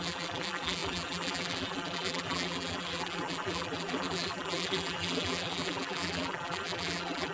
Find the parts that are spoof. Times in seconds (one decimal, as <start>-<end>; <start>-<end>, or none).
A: 0.0-7.3